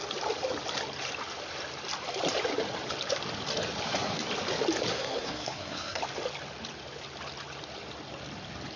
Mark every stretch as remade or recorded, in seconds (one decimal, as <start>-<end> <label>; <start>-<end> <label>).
0.0-4.9 recorded; 4.9-6.0 remade; 6.0-8.8 recorded